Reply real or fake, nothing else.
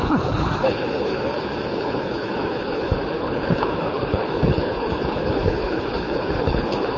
fake